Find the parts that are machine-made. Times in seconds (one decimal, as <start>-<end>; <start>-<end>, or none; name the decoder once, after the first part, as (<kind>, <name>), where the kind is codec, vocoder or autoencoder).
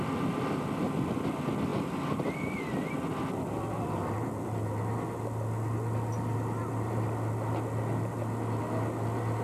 none